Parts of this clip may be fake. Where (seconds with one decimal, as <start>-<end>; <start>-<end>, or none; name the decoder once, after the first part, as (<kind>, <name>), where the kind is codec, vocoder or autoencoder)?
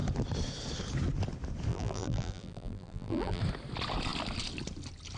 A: 1.7-3.4 (vocoder, BigVGAN v2)